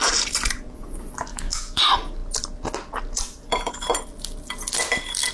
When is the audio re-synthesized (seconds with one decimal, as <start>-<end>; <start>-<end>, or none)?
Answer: 1.3-1.8